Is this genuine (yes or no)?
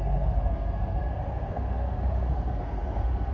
no